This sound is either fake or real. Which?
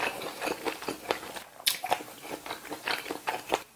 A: fake